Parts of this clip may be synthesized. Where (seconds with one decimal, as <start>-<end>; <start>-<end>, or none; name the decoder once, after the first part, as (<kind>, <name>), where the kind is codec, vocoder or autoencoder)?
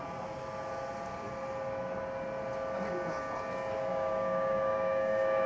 3.9-5.5 (codec, DAC)